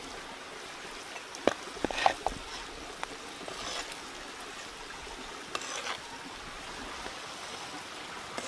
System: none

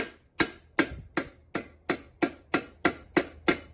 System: none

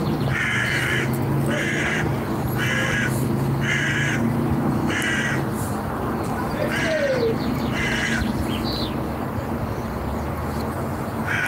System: none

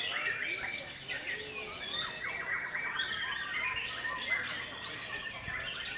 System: none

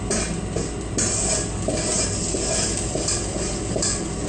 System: none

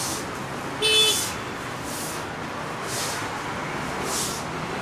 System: none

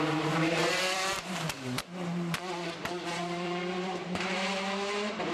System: vocoder, BigVGAN v2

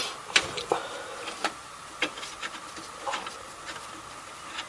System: none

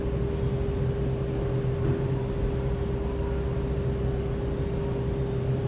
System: none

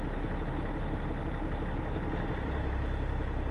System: none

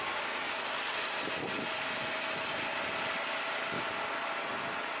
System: none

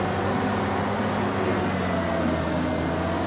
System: none